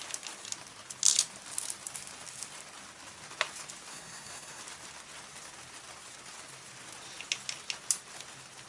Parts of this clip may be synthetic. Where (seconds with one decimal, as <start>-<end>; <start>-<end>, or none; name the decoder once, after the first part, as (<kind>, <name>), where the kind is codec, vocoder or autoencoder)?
3.9-4.6 (codec, SNAC)